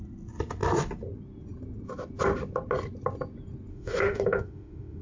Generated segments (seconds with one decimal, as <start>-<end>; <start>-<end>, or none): 3.7-5.0